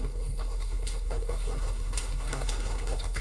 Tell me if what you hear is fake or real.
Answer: fake